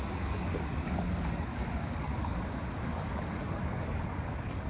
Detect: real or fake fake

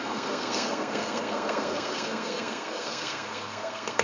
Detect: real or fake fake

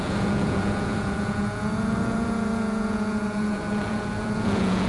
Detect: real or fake fake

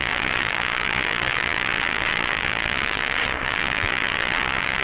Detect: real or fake fake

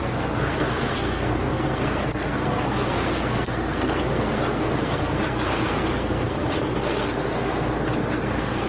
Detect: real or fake fake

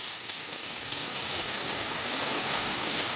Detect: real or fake fake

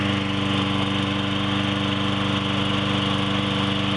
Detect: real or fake real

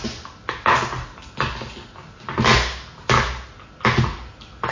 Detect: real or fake real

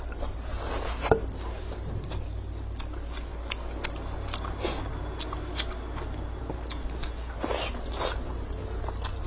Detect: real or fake real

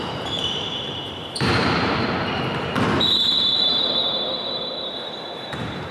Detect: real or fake fake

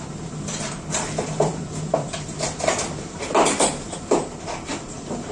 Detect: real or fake fake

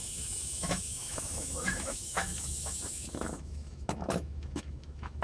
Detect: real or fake fake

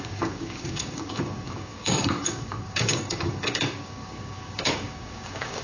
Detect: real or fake fake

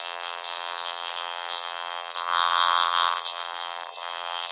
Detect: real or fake fake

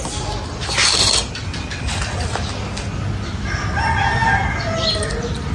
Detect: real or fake real